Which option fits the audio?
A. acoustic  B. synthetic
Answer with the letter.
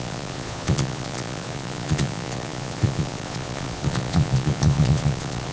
B